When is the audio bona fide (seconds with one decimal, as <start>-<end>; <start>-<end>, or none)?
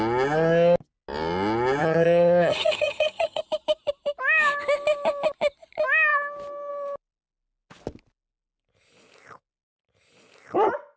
0.0-1.8; 3.4-11.0